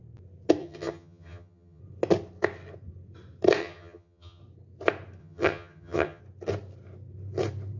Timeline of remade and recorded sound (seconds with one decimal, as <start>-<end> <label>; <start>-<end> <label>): 0.0-0.6 recorded; 0.6-1.8 remade; 1.8-3.6 recorded; 3.6-4.4 remade; 4.4-5.2 recorded; 5.2-6.2 remade; 6.2-7.8 recorded